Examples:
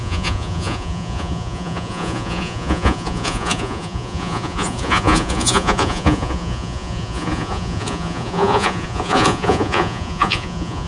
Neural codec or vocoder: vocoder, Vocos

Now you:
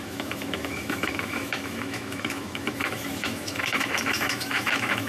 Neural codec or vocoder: autoencoder, DAC-VAE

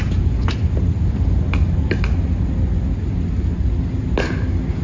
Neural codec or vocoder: none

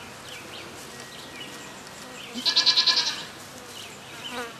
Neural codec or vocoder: none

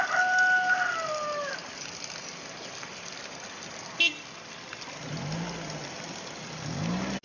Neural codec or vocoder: none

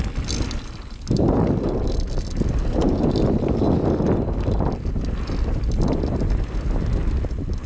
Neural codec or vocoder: none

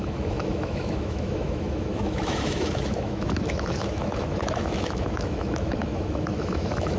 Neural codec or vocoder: autoencoder, DAC-VAE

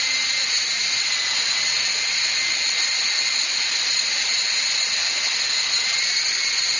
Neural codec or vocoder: none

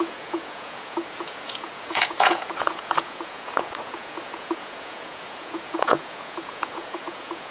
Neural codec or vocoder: vocoder, Vocos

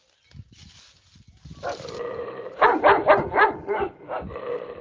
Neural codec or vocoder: none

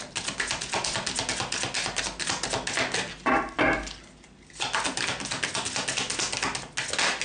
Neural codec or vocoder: none